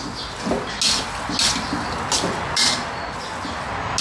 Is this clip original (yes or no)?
yes